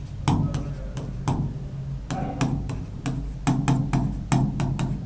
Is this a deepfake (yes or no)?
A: no